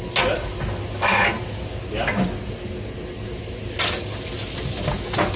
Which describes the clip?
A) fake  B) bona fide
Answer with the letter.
B